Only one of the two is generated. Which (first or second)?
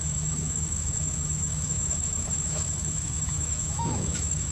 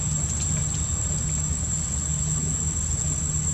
first